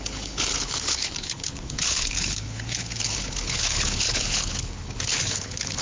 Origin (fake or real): fake